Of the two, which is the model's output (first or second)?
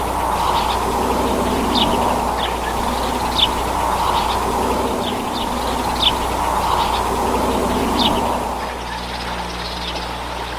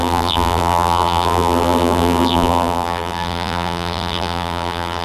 second